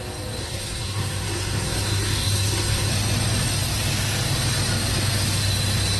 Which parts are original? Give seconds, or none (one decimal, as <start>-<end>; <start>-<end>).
0.0-0.4; 2.9-6.0